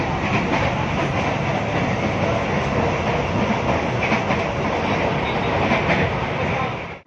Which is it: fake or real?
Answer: real